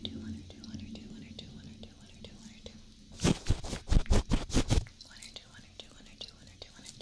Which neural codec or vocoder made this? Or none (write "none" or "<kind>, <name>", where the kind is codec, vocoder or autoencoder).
none